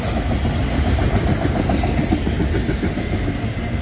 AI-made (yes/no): no